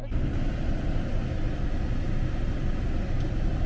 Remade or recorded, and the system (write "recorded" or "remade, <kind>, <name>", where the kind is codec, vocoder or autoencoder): recorded